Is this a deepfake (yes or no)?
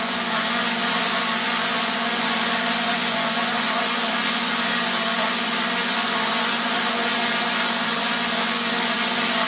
yes